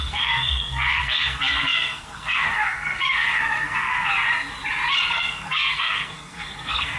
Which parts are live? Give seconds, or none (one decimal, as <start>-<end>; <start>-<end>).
4.1-5.1